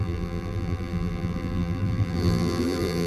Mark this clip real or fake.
fake